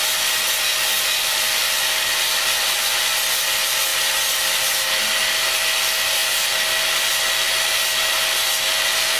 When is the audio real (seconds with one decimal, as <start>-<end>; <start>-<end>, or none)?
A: 0.0-9.2